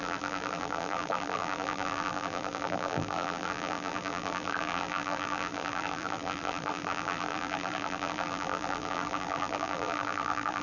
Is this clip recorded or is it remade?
remade